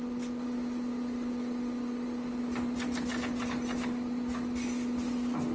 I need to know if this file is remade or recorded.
recorded